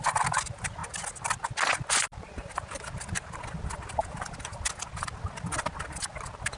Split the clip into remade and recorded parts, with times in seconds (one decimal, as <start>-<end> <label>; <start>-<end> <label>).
0.0-6.6 recorded